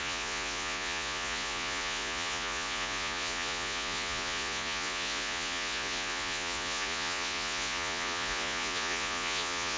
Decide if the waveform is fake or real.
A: fake